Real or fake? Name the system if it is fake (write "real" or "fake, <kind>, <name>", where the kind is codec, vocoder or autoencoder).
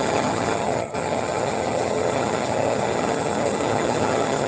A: fake, vocoder, HiFi-GAN